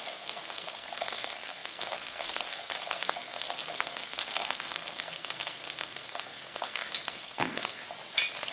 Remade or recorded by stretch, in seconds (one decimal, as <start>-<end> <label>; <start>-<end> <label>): 0.0-7.8 remade; 7.8-8.5 recorded